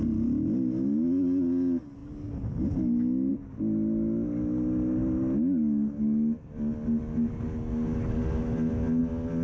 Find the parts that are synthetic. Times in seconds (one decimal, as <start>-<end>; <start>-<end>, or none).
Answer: none